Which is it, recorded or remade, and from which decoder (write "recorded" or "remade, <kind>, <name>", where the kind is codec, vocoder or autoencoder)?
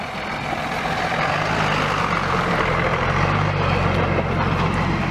recorded